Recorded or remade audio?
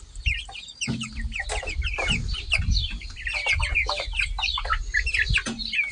recorded